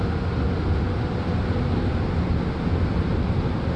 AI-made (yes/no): no